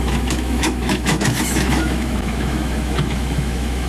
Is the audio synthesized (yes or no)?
yes